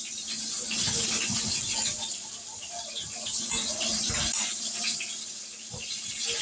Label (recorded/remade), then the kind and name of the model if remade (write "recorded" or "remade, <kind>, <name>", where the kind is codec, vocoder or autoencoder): recorded